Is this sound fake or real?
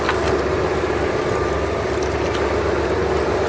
real